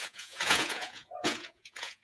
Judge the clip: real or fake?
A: fake